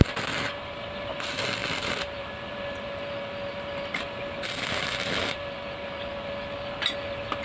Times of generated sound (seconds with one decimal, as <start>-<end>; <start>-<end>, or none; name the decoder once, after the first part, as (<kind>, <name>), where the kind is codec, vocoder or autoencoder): none